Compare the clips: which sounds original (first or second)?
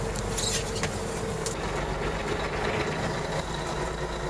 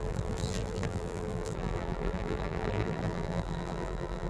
first